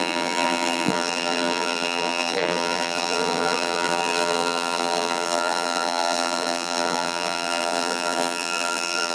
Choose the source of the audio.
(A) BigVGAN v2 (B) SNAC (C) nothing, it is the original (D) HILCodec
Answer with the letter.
A